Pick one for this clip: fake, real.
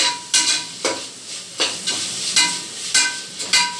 real